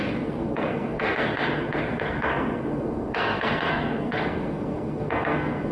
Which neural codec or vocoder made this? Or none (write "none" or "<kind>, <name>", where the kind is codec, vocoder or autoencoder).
codec, SNAC